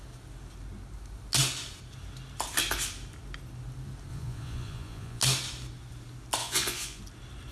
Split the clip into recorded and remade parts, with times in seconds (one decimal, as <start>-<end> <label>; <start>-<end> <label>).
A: 0.0-4.1 recorded; 4.1-5.2 remade; 5.2-6.4 recorded; 6.4-7.0 remade; 7.0-7.5 recorded